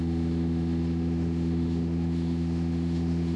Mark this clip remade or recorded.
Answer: remade